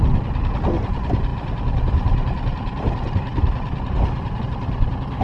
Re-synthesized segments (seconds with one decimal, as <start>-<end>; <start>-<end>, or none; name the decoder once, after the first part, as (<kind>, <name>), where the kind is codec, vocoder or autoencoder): 1.3-4.4 (vocoder, BigVGAN v2)